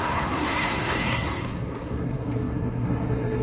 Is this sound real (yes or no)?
no